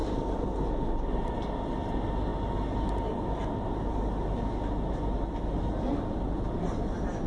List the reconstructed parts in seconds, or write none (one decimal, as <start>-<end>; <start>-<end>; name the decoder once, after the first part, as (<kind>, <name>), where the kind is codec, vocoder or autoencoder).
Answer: none